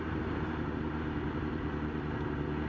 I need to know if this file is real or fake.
real